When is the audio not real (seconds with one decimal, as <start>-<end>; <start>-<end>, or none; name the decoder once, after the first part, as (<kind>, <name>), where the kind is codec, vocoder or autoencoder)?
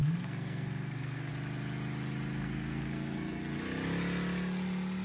0.0-1.3 (codec, SNAC); 2.4-3.4